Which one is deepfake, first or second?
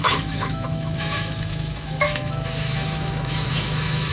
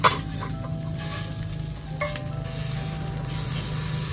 first